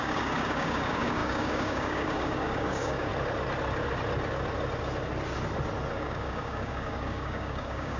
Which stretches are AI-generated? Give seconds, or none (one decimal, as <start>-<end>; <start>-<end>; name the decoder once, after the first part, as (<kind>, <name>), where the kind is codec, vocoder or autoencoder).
0.0-3.1 (codec, DAC); 5.9-8.0